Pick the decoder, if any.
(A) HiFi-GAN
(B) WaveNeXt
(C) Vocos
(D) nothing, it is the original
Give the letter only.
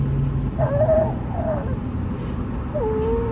D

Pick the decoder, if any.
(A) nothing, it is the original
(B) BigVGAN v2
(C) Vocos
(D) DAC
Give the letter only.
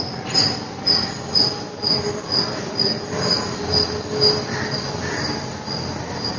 A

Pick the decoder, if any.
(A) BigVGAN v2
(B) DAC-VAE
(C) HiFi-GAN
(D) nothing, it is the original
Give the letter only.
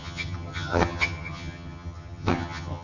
C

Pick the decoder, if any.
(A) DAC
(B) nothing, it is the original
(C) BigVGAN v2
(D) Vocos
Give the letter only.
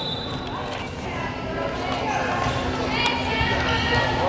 B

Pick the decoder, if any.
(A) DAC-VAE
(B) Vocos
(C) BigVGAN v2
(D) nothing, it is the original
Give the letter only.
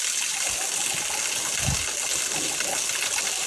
D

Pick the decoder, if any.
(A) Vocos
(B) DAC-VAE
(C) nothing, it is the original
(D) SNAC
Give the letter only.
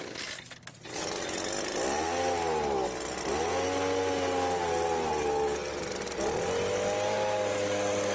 C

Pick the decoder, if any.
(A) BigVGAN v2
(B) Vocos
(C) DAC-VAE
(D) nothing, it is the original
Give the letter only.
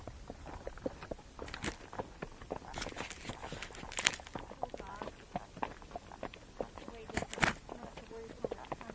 D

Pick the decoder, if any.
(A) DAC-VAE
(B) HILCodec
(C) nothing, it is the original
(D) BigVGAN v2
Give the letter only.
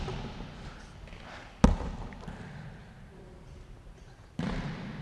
C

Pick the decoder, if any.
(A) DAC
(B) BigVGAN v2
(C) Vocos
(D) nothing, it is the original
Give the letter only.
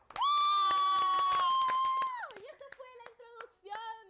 D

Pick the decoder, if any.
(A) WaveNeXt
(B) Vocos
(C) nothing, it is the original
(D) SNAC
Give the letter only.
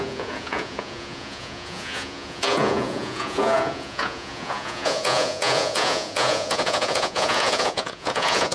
B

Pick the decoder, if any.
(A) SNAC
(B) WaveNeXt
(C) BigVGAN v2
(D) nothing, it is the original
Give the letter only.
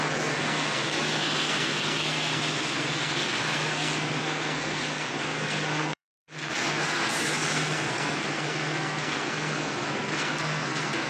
A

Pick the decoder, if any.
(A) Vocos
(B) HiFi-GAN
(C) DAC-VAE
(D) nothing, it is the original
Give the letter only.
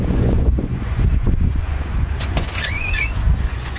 A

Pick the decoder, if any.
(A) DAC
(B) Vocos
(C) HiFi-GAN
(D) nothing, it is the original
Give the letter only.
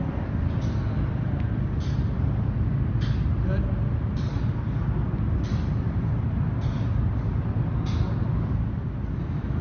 D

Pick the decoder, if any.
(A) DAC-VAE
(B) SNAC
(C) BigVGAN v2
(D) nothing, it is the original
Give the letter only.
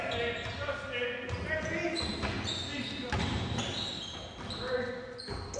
D